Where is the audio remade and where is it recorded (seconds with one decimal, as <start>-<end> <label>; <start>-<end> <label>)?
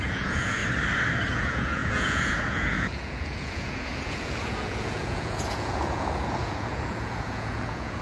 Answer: 0.0-0.6 remade; 0.6-1.3 recorded; 1.3-8.0 remade